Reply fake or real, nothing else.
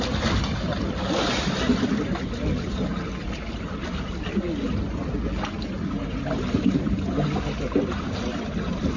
real